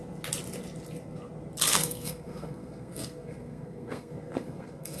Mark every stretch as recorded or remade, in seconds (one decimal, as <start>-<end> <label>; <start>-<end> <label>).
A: 0.0-1.7 recorded; 1.7-5.0 remade